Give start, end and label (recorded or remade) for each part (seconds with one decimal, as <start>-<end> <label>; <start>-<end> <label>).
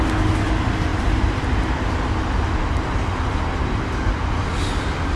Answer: 0.0-5.2 recorded